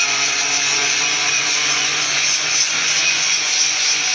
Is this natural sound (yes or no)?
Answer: no